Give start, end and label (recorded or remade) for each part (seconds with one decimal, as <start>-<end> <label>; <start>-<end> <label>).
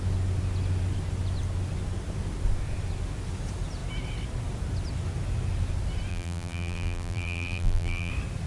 0.0-6.1 recorded; 6.1-8.1 remade; 8.1-8.5 recorded